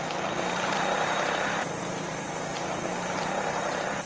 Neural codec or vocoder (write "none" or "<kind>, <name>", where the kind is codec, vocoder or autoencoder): vocoder, BigVGAN v2